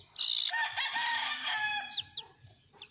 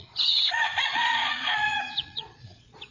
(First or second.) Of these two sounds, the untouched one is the first